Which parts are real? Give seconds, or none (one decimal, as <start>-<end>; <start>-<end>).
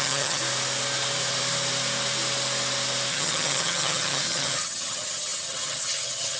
0.4-3.1